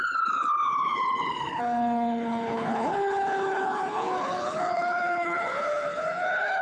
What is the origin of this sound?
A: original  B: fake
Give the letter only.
B